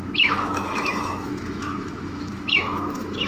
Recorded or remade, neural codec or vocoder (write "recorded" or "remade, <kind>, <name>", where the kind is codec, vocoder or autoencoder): remade, autoencoder, DAC-VAE